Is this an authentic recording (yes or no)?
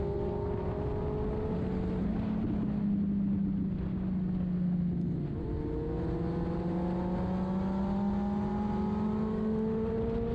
yes